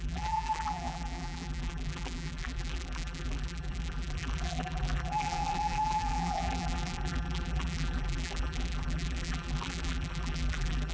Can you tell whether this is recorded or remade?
remade